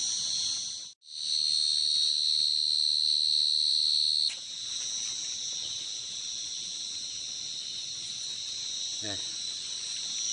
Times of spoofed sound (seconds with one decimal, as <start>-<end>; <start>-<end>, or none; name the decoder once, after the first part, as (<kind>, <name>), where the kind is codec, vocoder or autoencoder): 7.7-9.7 (vocoder, Vocos)